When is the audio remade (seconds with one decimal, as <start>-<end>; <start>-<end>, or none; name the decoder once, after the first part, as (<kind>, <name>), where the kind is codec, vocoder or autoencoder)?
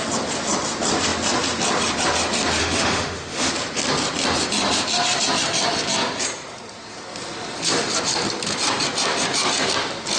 2.6-3.5 (autoencoder, DAC-VAE)